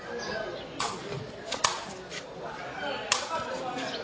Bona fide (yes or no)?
yes